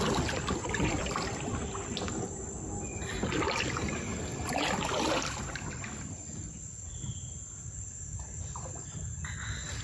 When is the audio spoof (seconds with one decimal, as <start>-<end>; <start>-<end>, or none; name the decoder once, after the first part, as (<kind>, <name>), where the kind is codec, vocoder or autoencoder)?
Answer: none

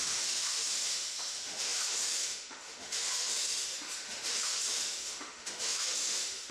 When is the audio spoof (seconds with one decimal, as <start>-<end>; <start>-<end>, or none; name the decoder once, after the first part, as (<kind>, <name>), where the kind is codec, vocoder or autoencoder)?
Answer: 0.0-6.5 (autoencoder, DAC-VAE)

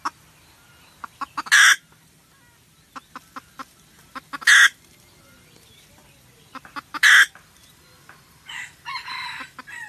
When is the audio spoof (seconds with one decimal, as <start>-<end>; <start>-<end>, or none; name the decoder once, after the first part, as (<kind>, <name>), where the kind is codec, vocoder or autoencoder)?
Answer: none

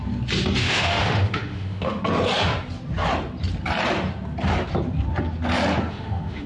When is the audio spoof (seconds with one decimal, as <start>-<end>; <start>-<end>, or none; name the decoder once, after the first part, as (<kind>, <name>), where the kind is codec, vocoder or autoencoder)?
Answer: 0.6-2.0 (autoencoder, DAC-VAE); 5.9-6.5

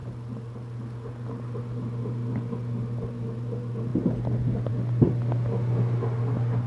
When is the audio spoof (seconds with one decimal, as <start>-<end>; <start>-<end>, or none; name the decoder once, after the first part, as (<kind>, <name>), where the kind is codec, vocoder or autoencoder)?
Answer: none

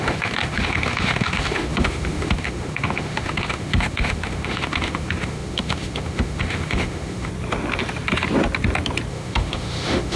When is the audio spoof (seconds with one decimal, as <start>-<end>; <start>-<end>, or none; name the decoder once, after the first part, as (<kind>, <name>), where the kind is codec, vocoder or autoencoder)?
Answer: 0.0-7.3 (autoencoder, DAC-VAE); 9.1-10.2

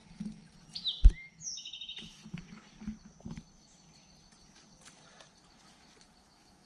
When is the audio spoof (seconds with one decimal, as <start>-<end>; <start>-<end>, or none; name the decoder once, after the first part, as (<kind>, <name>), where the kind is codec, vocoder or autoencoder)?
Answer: 1.3-2.2 (autoencoder, DAC-VAE); 6.2-6.7

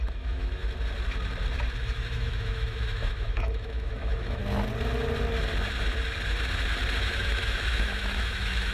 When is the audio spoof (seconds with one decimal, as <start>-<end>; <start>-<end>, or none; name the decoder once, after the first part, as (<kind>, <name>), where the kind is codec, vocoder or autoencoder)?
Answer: 0.0-0.6 (autoencoder, DAC-VAE); 1.8-4.4; 7.0-8.7